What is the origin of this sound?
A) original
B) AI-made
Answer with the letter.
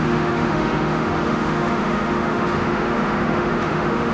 B